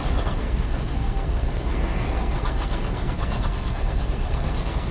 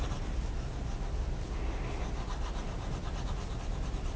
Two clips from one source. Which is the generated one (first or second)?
first